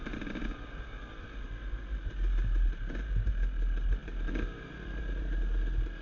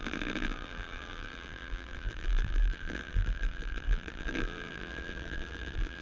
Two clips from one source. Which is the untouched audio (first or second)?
first